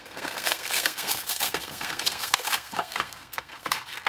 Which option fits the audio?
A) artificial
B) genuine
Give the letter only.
A